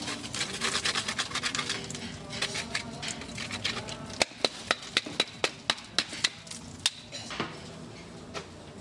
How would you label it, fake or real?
real